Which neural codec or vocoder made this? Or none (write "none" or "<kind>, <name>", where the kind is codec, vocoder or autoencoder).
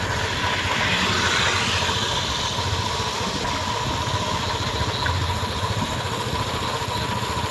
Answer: none